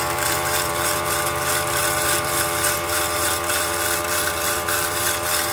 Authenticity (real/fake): fake